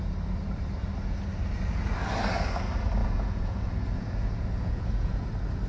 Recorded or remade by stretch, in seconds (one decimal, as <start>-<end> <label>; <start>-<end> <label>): 0.0-3.0 recorded; 3.0-5.3 remade; 5.3-5.7 recorded